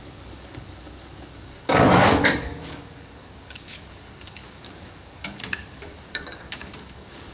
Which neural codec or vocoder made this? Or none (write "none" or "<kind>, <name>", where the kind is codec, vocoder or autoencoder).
codec, DAC